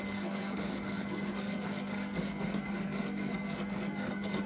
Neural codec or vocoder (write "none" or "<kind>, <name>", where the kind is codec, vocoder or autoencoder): codec, SNAC